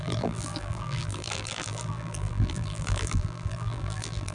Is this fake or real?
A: fake